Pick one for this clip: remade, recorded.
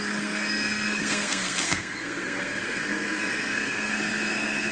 remade